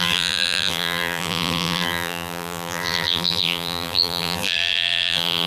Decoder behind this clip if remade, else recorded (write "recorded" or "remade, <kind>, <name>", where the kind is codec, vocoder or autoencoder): remade, vocoder, BigVGAN v2